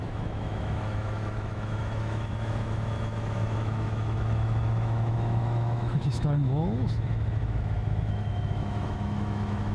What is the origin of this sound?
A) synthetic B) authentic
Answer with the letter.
A